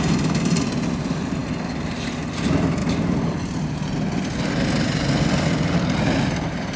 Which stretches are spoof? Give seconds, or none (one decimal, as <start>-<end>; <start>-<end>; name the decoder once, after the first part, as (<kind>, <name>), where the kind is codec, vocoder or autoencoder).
none